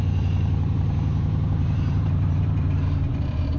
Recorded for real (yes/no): no